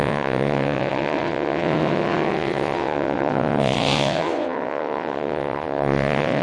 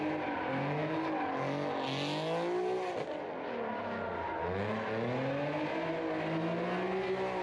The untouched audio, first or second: second